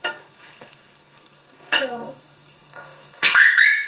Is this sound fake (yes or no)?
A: yes